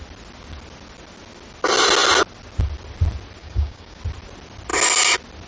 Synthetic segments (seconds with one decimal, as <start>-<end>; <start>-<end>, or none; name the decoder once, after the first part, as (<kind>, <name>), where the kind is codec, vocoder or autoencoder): 3.4-4.0 (codec, DAC)